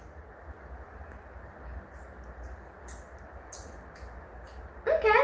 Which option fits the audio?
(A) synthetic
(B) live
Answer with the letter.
B